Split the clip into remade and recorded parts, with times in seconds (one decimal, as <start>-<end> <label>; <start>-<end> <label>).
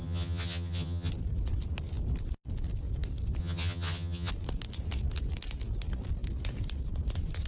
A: 0.0-1.1 remade; 1.1-3.4 recorded; 3.4-4.3 remade; 4.3-7.5 recorded